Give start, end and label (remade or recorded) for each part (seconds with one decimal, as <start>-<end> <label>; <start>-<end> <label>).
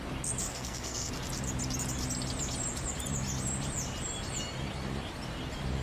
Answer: 0.0-0.5 recorded; 0.5-1.1 remade; 1.1-5.8 recorded